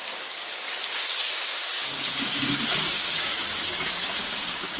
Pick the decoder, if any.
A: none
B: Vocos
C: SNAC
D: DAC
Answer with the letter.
D